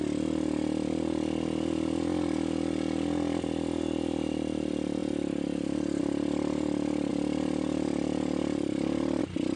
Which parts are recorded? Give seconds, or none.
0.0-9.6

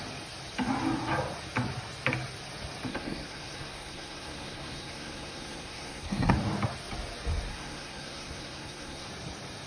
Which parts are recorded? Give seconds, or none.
0.0-2.9; 6.3-7.5; 9.1-9.7